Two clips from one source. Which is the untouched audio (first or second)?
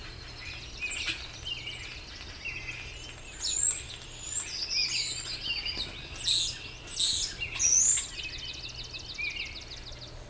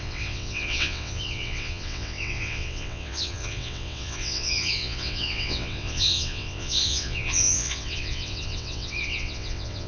first